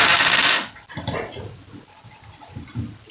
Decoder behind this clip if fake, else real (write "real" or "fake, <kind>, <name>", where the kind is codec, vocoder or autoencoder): real